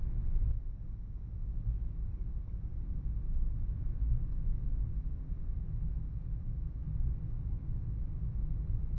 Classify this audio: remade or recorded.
recorded